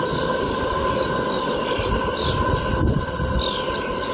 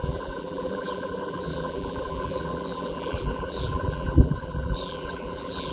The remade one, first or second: second